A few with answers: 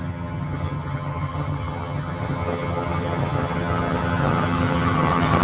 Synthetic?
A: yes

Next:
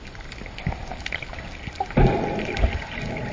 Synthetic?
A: no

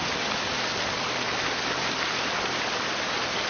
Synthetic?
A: no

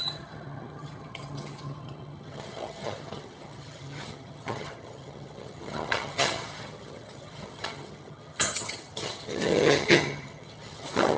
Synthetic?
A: yes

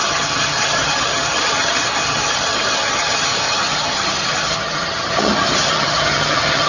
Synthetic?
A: yes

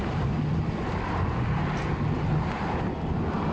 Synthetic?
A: no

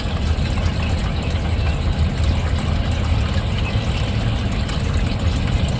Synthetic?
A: no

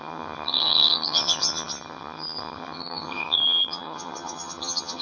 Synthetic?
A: yes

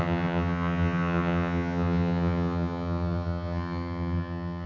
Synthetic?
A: yes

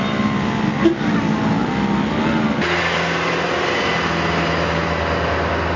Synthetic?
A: no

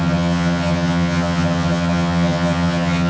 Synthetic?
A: yes